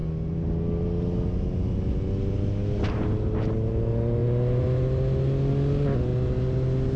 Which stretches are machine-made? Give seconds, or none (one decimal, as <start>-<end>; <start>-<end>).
none